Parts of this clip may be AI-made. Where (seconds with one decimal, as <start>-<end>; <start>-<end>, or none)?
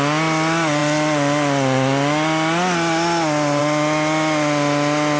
none